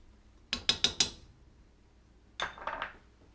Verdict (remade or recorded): recorded